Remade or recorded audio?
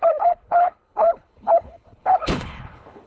remade